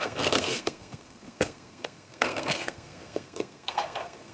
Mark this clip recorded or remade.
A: remade